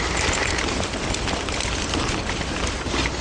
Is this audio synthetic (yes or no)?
no